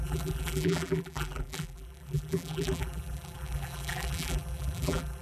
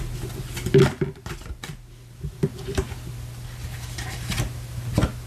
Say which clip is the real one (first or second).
second